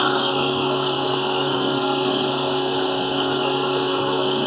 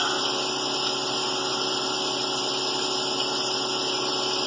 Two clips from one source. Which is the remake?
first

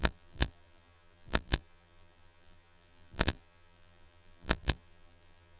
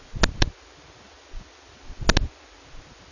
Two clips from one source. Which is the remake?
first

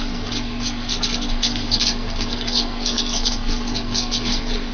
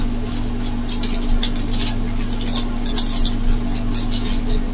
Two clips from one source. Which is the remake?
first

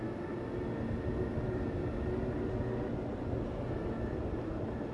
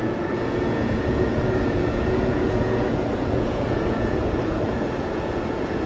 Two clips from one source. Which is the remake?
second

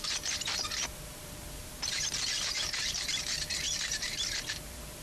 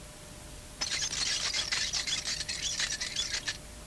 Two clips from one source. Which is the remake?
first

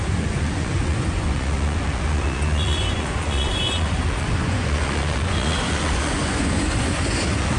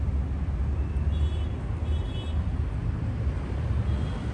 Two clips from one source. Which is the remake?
first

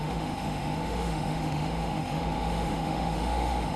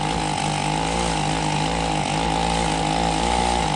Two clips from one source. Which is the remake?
first